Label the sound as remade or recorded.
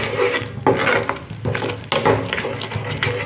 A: recorded